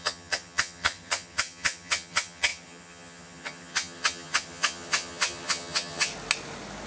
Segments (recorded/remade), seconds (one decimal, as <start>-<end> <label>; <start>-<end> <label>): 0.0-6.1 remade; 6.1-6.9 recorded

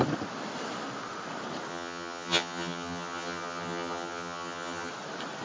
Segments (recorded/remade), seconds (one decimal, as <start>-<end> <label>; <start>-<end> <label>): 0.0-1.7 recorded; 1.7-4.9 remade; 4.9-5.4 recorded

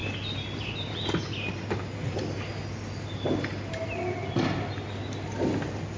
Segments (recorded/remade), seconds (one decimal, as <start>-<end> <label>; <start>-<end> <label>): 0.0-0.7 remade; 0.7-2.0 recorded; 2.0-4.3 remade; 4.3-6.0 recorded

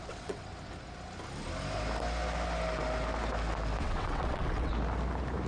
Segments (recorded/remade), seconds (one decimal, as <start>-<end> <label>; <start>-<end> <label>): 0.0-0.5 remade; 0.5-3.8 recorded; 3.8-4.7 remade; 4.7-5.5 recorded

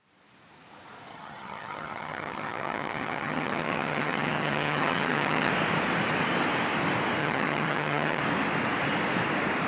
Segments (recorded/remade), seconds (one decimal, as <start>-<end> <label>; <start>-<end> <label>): 0.0-1.1 recorded; 1.1-5.5 remade; 5.5-7.2 recorded; 7.2-8.2 remade; 8.2-9.7 recorded

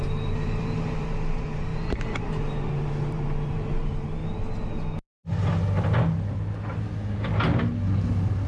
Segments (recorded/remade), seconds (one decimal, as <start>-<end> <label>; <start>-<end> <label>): 0.0-4.2 remade; 4.2-8.5 recorded

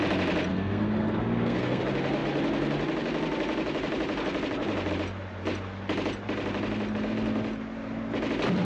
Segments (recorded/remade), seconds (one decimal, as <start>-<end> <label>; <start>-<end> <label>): 0.0-0.5 recorded; 0.5-1.8 remade; 1.8-8.6 recorded